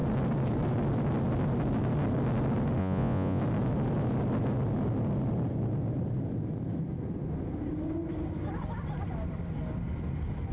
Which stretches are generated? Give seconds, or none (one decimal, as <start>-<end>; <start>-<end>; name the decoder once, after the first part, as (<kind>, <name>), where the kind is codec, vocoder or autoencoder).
2.8-3.4 (vocoder, Vocos)